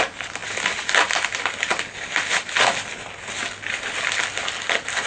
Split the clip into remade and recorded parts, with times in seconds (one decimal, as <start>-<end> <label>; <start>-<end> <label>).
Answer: 0.0-5.1 recorded